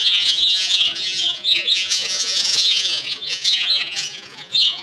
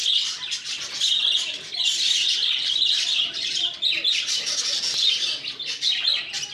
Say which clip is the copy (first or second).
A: first